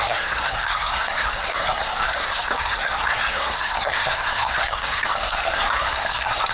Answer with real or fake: fake